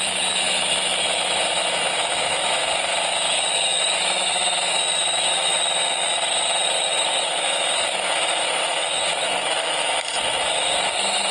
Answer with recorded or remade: remade